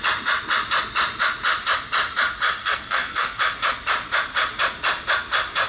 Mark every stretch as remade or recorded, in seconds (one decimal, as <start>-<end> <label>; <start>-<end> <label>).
0.0-2.6 recorded; 2.6-3.4 remade; 3.4-5.7 recorded